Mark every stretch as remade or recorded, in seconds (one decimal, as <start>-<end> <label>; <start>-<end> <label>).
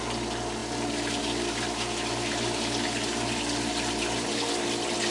0.0-5.1 recorded